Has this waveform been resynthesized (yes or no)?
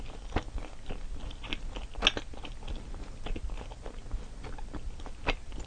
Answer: no